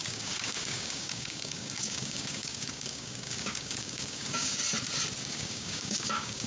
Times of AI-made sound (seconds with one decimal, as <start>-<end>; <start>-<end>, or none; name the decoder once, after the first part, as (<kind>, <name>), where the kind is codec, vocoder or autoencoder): 0.0-4.6 (codec, DAC); 5.2-6.5